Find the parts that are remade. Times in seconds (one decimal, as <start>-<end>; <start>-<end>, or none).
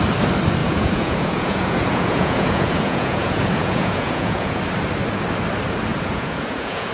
0.6-4.6; 5.9-6.9